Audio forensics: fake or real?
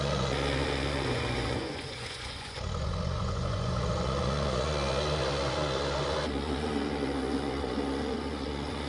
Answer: fake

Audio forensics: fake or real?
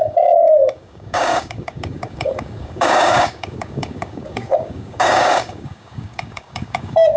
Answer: fake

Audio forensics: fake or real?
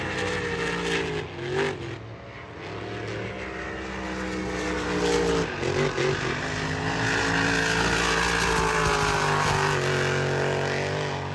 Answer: real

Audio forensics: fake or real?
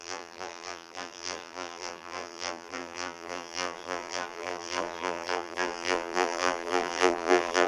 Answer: fake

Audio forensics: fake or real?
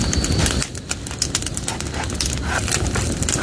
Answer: real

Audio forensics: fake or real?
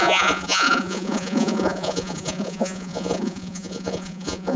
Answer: fake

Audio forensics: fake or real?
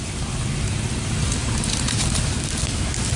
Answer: real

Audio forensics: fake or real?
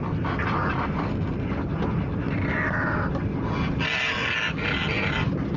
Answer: real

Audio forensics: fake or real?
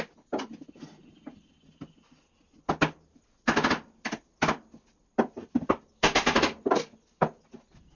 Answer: real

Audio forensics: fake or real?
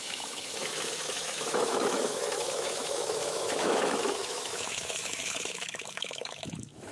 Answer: fake